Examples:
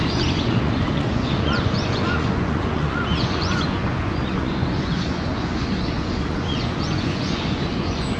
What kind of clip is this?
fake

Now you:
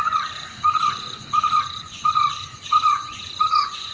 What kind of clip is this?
fake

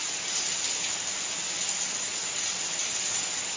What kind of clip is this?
real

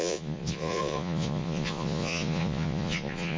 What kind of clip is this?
fake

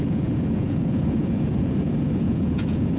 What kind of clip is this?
fake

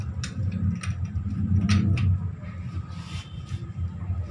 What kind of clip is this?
real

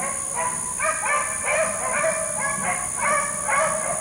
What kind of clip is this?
real